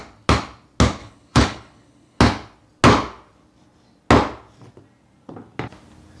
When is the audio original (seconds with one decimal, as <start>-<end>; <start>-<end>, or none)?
0.0-1.0; 2.2-6.2